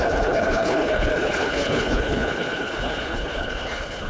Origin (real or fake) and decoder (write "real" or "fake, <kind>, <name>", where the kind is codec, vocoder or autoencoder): fake, codec, HILCodec